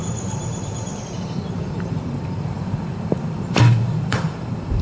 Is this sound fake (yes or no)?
yes